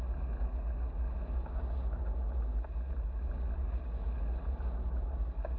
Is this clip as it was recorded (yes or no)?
yes